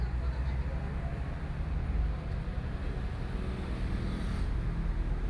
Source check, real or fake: real